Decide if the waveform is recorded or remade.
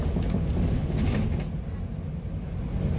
recorded